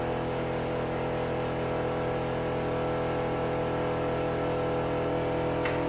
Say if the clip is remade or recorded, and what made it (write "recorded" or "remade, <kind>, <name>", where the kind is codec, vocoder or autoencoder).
recorded